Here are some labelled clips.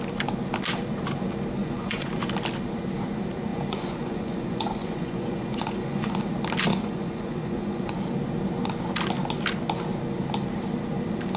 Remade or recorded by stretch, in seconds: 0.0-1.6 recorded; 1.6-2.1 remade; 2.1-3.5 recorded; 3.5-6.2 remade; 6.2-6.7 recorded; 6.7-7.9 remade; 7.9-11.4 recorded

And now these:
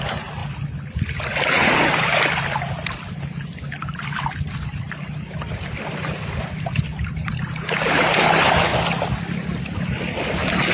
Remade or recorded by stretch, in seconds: 0.0-10.7 recorded

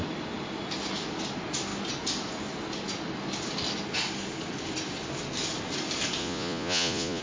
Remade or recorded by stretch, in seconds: 0.0-6.2 recorded; 6.2-7.2 remade

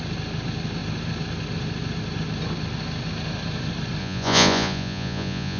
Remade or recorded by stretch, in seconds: 0.0-4.0 recorded; 4.0-5.6 remade